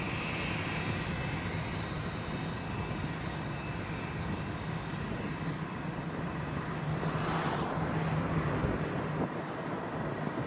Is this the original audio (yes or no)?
yes